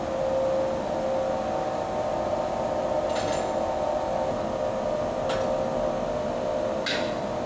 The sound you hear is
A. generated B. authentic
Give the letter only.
B